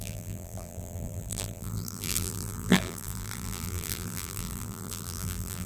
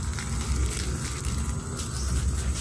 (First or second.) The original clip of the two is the second